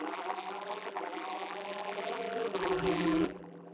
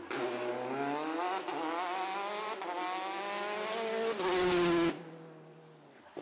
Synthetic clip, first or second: first